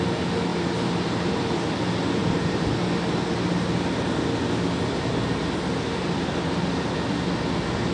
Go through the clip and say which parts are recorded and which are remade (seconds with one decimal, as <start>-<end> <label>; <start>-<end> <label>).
0.0-0.5 recorded; 0.5-1.8 remade; 1.8-7.9 recorded